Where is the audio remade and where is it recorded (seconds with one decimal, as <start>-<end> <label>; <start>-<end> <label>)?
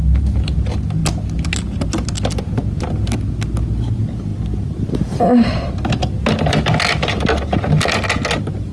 0.0-4.3 recorded; 4.3-5.7 remade; 5.7-8.7 recorded